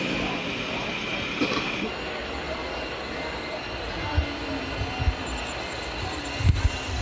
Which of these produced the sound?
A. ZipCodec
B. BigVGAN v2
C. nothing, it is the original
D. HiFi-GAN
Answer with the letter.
C